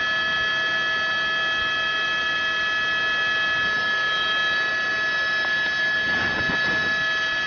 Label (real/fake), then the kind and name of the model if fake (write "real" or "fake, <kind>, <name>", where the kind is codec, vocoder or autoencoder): real